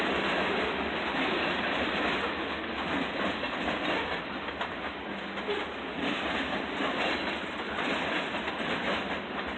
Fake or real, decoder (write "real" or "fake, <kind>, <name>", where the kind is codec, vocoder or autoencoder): real